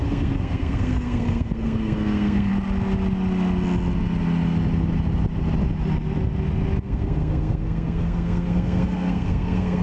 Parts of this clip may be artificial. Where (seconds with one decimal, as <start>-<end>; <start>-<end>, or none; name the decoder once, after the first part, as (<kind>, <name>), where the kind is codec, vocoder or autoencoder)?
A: 0.0-2.5 (codec, SNAC); 6.8-9.8